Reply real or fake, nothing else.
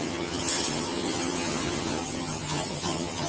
fake